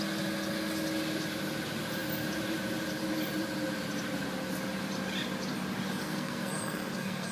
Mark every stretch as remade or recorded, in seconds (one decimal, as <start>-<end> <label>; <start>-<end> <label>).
0.0-6.0 recorded; 6.0-7.3 remade